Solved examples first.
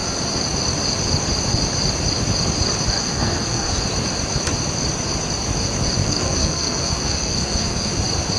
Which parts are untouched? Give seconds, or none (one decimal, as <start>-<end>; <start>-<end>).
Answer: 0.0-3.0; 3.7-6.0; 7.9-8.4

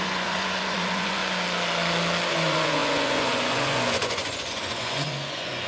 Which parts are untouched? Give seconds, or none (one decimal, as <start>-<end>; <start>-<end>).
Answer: 1.2-2.3

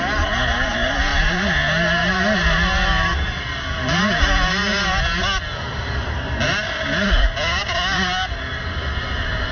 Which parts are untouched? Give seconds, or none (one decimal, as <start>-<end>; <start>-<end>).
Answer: 0.0-9.5